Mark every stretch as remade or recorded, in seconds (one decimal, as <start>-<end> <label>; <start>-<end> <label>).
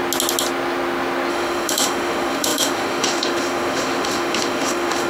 0.0-1.3 recorded; 1.3-5.1 remade